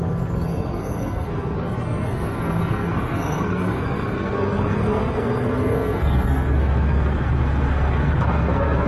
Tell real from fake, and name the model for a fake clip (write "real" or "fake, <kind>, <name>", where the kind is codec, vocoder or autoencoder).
fake, codec, SNAC